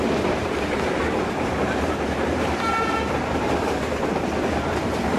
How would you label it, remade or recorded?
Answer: recorded